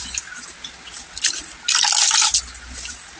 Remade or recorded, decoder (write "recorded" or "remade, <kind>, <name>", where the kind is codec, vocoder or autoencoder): recorded